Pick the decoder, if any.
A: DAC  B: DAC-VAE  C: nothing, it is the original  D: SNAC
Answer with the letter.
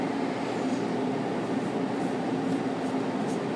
C